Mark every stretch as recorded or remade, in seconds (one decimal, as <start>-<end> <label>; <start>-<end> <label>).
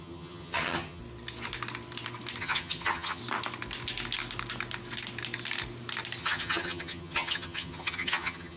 0.0-1.0 remade; 1.0-2.4 recorded; 2.4-3.2 remade; 3.2-6.2 recorded; 6.2-8.6 remade